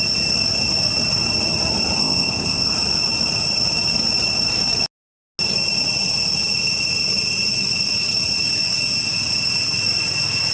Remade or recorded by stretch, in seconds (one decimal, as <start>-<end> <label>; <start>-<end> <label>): 0.0-2.0 recorded; 2.0-2.7 remade; 2.7-10.5 recorded